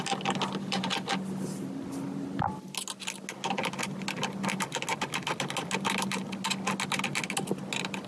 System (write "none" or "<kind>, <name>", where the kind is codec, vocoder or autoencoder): none